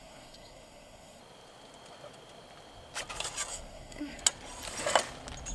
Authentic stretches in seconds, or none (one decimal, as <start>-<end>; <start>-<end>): 1.2-3.5; 4.2-5.5